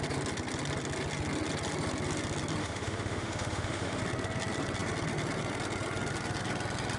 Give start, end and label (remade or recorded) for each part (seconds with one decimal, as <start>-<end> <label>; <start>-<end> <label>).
0.0-2.6 recorded; 2.6-4.0 remade; 4.0-7.0 recorded